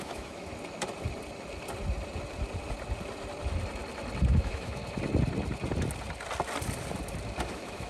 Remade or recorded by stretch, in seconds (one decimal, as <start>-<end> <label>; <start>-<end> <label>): 0.0-0.5 remade; 0.5-4.3 recorded; 4.3-4.8 remade; 4.8-7.5 recorded; 7.5-7.9 remade